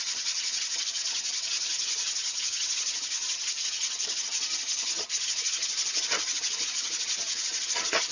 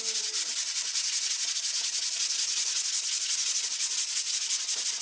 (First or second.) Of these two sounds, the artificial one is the first